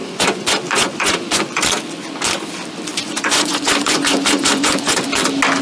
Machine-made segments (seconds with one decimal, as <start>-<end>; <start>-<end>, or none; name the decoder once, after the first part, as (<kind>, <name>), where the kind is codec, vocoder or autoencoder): 0.0-1.6 (vocoder, Vocos); 2.9-5.0